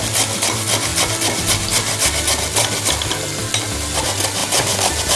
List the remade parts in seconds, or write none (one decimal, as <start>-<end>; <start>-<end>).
4.4-5.2